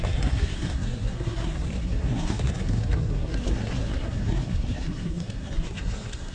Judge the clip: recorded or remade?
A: remade